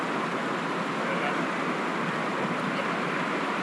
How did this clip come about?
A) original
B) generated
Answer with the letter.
A